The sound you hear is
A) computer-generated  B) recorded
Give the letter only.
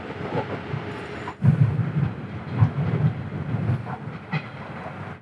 B